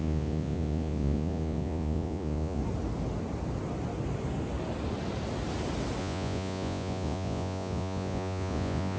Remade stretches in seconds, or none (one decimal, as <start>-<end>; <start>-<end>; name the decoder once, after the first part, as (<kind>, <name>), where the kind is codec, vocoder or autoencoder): 0.0-2.6 (vocoder, Vocos); 6.0-9.0